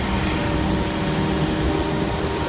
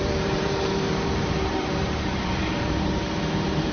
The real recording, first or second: first